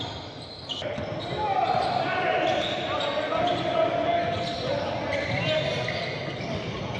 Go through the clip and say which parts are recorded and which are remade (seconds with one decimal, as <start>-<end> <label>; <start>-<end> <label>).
0.0-7.0 recorded